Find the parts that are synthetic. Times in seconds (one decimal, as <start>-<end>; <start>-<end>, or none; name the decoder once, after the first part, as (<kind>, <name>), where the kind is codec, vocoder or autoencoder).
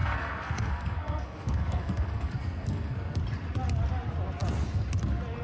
0.0-3.2 (codec, SNAC)